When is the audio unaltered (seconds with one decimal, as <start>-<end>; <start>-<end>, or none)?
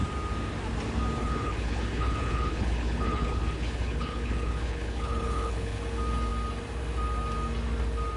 0.0-1.2; 5.8-8.2